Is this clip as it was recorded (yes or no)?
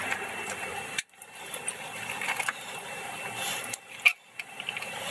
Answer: yes